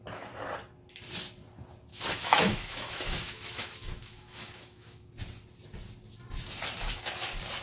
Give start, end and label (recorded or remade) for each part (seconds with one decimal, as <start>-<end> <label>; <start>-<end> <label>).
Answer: 0.0-1.9 recorded; 1.9-5.1 remade; 5.1-7.6 recorded